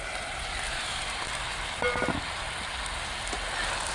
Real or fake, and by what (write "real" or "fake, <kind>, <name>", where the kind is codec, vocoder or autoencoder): real